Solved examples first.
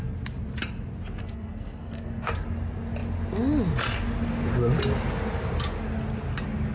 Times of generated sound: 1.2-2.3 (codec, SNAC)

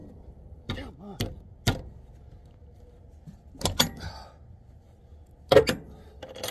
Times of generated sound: 0.0-0.7 (vocoder, BigVGAN v2)

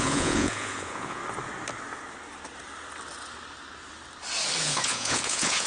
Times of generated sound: 0.0-1.2 (vocoder, Vocos); 4.6-5.7

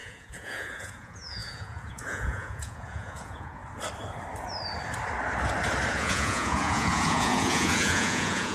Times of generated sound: 0.0-3.6 (vocoder, Vocos); 5.9-8.5

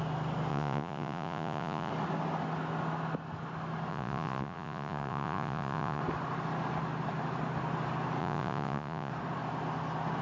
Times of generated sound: 0.5-1.9 (vocoder, Vocos); 3.9-6.0; 8.2-9.1

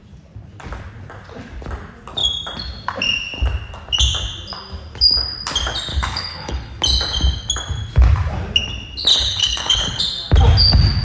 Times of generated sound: 5.9-6.8 (codec, HILCodec); 9.1-10.0